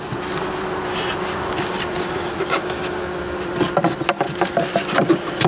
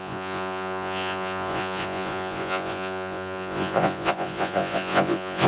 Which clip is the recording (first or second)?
first